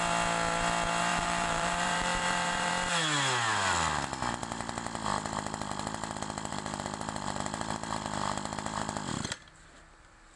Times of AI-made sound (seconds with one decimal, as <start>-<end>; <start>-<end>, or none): 1.1-2.7